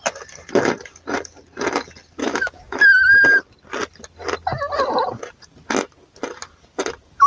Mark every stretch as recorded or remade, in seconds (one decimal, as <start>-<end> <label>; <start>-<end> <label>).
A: 0.0-2.2 recorded; 2.2-2.8 remade; 2.8-7.3 recorded